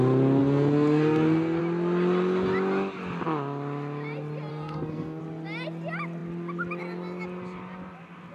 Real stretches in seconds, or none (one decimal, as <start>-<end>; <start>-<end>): 0.0-0.4; 1.6-4.5; 5.2-8.3

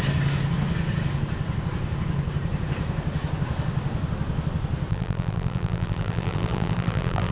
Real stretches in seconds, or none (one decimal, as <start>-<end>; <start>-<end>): 0.0-4.9

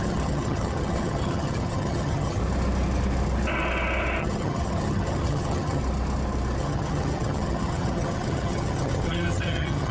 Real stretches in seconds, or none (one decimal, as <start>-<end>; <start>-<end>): 2.4-4.2; 5.8-6.6

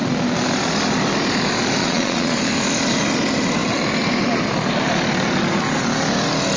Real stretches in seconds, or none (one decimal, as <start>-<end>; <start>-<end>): 0.0-1.8; 2.4-6.6

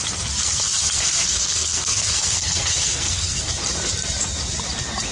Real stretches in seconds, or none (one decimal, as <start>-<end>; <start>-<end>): 0.0-0.4; 3.5-5.1

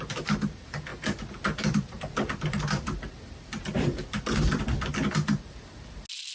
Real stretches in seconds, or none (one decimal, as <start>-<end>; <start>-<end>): 0.0-0.9; 4.6-6.3

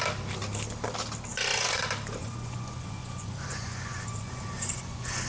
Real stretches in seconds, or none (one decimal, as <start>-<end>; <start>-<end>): 0.0-1.3; 1.8-2.2